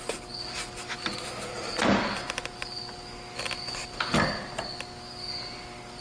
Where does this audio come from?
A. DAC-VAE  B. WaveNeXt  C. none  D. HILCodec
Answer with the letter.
C